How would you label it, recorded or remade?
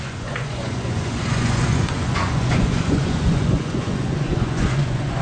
remade